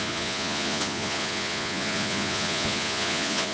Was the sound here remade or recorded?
remade